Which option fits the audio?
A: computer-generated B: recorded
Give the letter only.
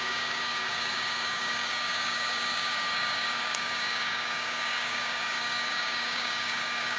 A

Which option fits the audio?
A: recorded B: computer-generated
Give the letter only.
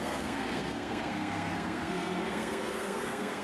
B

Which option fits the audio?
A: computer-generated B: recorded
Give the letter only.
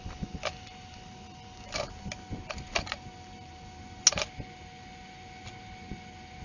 B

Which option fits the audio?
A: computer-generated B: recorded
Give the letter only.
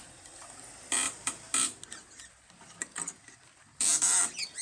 B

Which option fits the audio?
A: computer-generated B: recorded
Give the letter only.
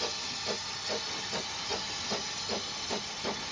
B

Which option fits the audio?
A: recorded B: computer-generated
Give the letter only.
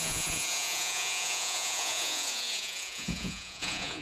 B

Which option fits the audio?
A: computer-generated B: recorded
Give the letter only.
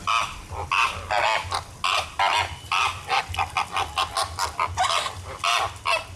B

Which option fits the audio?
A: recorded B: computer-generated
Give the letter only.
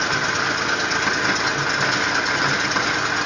A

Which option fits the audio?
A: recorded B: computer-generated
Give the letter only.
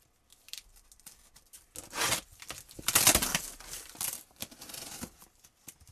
A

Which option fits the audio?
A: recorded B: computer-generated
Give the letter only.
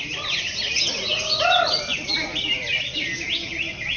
A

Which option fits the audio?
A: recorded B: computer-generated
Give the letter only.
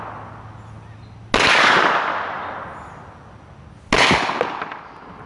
A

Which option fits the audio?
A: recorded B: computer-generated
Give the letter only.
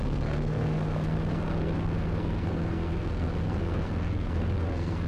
B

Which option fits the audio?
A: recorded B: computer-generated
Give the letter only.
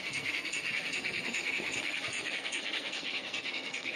B